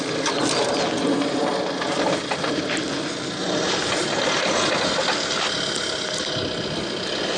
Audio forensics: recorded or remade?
recorded